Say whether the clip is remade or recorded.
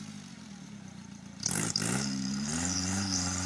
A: remade